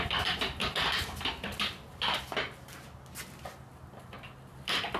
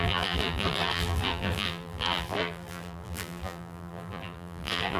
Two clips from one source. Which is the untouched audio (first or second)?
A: first